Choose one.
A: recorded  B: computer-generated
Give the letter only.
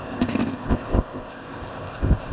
B